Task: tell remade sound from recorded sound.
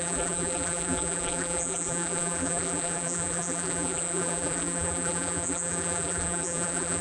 remade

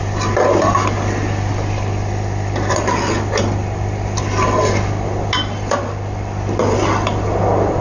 recorded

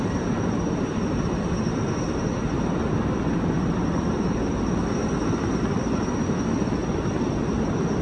recorded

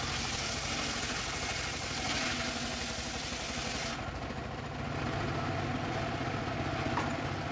remade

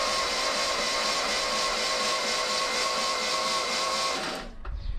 remade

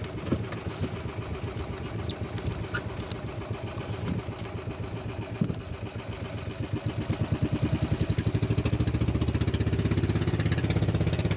recorded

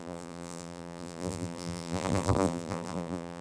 remade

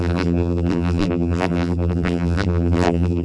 remade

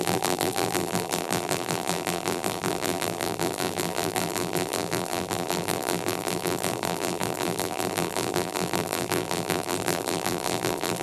remade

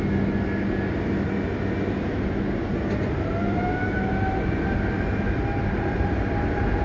recorded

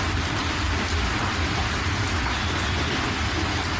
recorded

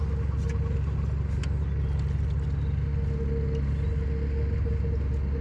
recorded